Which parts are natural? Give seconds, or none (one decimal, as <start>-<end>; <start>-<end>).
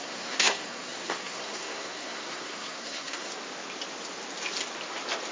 3.3-5.3